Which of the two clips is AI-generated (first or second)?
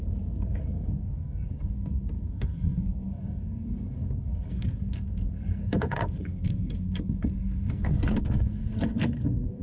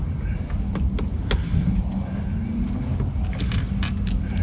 first